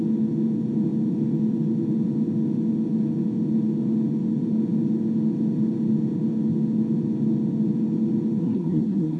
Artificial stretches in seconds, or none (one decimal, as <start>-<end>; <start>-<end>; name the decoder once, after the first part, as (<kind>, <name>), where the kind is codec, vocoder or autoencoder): 8.4-9.2 (codec, SNAC)